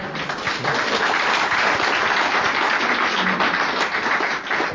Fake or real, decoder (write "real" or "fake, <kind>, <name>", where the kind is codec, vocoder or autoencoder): real